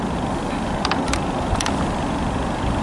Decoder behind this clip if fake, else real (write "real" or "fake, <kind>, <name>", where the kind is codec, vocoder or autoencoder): real